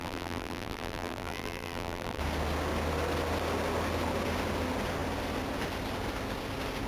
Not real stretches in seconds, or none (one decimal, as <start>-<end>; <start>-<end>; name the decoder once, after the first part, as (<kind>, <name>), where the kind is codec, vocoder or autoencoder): 0.0-2.2 (vocoder, BigVGAN v2)